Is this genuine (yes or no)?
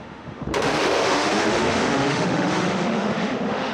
no